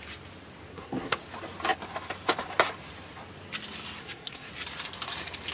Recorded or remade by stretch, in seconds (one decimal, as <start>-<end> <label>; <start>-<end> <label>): 0.0-0.7 recorded; 0.7-1.2 remade; 1.2-4.0 recorded; 4.0-4.5 remade; 4.5-5.5 recorded